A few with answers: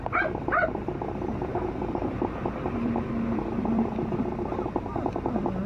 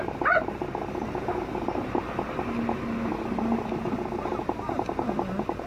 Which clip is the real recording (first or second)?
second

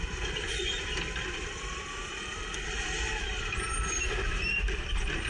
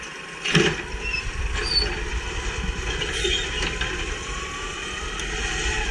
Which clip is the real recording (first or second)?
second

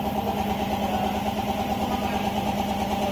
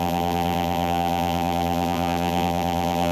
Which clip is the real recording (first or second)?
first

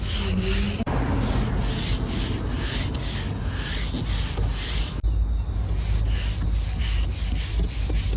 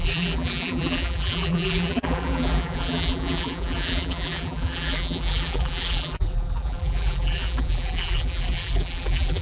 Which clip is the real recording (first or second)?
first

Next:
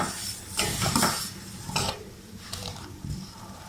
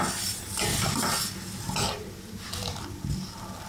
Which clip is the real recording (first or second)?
second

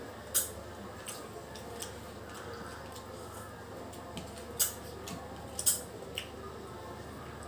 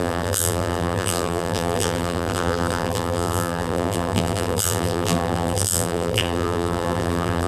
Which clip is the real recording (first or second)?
first